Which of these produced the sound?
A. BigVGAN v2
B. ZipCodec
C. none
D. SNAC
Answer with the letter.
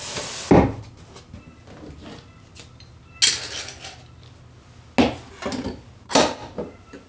C